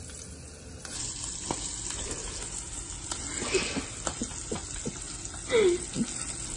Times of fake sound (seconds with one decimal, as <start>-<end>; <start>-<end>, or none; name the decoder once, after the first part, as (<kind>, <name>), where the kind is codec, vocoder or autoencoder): none